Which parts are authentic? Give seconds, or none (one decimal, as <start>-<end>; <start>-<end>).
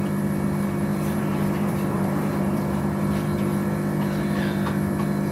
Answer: 0.0-0.9; 2.8-5.3